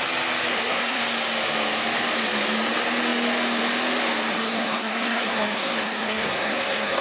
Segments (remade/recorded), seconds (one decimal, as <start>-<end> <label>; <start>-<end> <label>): 0.0-0.5 recorded; 0.5-1.0 remade; 1.0-4.3 recorded; 4.3-7.0 remade